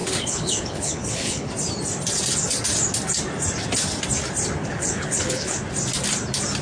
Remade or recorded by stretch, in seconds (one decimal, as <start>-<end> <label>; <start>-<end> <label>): 0.0-1.5 remade; 1.5-4.6 recorded; 4.6-5.6 remade; 5.6-6.6 recorded